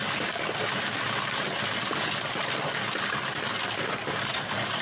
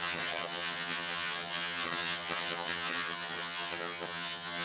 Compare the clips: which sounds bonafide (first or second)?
first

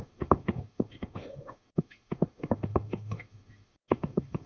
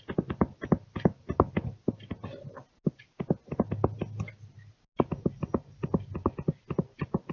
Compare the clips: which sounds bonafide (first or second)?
second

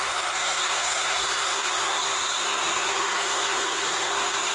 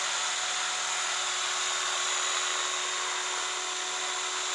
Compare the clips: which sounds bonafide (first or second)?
second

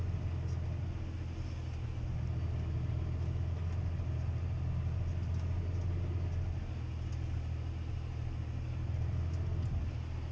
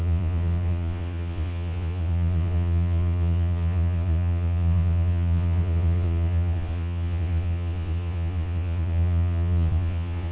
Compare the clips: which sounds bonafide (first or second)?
first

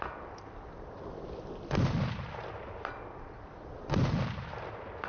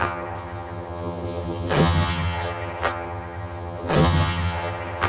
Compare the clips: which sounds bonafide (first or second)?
first